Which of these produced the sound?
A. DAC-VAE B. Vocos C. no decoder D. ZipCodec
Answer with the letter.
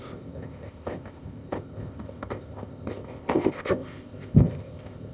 D